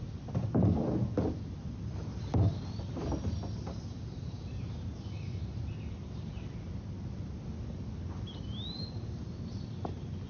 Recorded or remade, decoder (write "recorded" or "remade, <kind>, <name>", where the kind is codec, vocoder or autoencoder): recorded